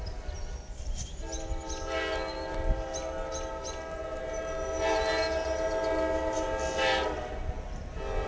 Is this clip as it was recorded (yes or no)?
yes